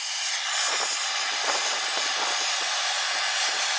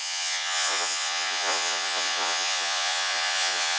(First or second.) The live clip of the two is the first